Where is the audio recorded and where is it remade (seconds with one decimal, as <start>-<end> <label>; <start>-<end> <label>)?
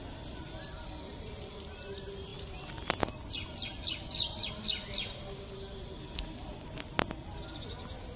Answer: 0.0-8.2 recorded